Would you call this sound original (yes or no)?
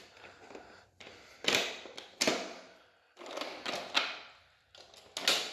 yes